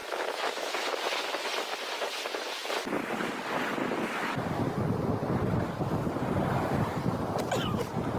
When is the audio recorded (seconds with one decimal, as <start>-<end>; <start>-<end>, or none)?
1.0-8.2